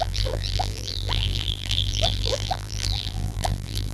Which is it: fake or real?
fake